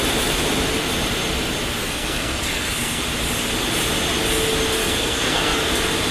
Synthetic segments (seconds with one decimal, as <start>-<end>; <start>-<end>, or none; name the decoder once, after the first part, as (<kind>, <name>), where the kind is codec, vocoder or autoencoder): 1.8-3.0 (codec, SNAC); 4.8-5.6